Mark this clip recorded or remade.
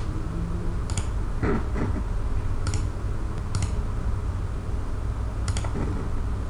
recorded